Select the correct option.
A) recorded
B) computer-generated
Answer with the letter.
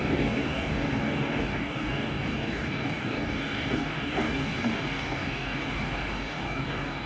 B